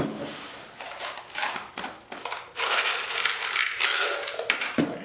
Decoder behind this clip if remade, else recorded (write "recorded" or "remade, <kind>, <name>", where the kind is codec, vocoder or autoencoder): recorded